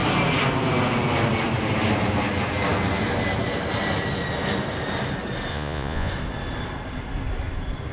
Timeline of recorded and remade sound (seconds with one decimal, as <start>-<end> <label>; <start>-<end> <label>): 0.0-5.5 recorded; 5.5-6.1 remade; 6.1-7.9 recorded